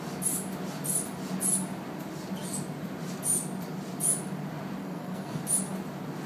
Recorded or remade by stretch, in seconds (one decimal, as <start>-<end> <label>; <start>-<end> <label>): 0.0-4.8 recorded; 4.8-5.4 remade; 5.4-6.3 recorded